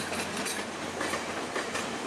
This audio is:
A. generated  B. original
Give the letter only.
B